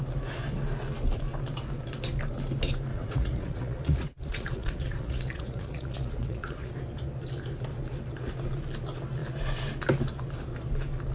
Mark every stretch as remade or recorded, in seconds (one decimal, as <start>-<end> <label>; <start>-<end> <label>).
0.0-2.9 recorded; 2.9-6.7 remade; 6.7-11.1 recorded

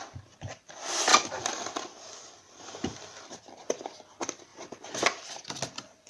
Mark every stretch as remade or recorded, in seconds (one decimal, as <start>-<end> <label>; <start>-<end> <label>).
0.0-1.1 recorded; 1.1-3.8 remade; 3.8-6.1 recorded

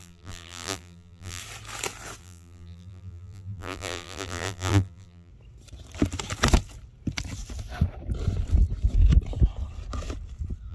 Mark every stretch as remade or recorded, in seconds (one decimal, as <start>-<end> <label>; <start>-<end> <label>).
0.0-1.4 remade; 1.4-2.2 recorded; 2.2-5.3 remade; 5.3-10.7 recorded

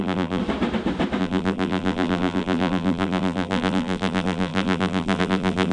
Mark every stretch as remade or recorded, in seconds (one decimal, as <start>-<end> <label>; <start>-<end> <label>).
0.0-0.4 remade; 0.4-1.2 recorded; 1.2-5.7 remade

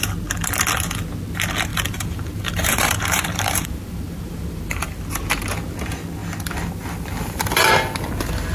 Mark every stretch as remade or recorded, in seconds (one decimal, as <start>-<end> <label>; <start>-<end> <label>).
0.0-1.7 recorded; 1.7-5.0 remade; 5.0-8.5 recorded

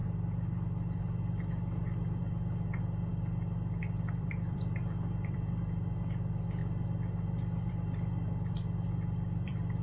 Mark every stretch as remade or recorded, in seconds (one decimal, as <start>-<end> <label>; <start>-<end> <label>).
0.0-6.6 remade; 6.6-7.7 recorded; 7.7-9.8 remade

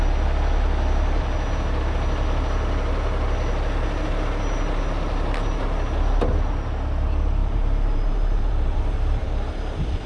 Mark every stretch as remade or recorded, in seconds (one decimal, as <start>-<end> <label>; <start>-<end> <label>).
0.0-7.4 recorded; 7.4-9.6 remade; 9.6-10.1 recorded

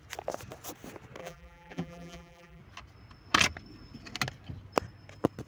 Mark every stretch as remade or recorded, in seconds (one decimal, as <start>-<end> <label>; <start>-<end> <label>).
0.0-1.2 recorded; 1.2-2.6 remade; 2.6-5.5 recorded